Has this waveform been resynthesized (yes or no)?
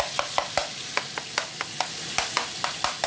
no